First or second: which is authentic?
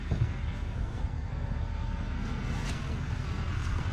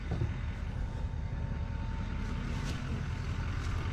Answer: second